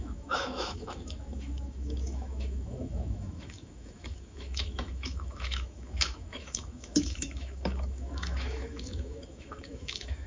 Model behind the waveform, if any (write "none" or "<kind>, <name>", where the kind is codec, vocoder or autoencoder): autoencoder, DAC-VAE